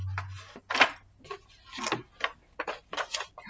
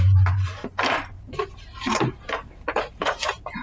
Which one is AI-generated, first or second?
second